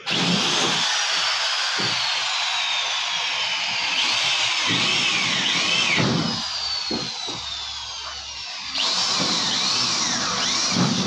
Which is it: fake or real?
real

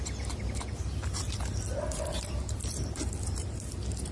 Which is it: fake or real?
fake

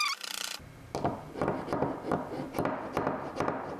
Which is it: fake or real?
real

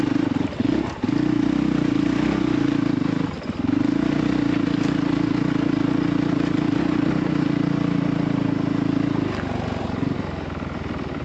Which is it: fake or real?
real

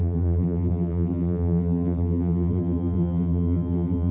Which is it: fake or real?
fake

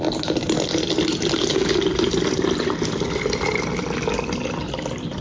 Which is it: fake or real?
real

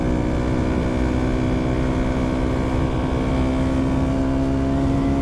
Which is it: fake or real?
real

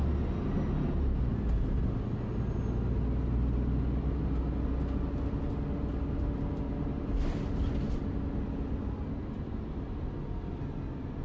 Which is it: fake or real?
real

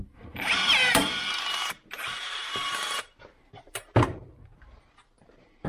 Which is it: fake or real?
fake